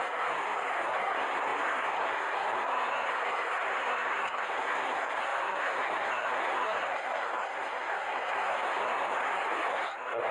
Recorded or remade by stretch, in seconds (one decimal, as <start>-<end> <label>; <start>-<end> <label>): 0.0-10.3 remade